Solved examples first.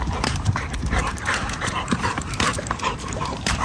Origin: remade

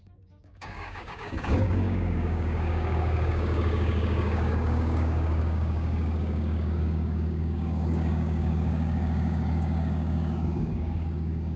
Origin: remade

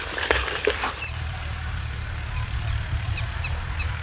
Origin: remade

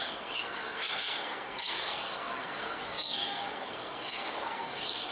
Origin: remade